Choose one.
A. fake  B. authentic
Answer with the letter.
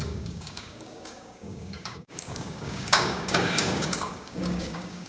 A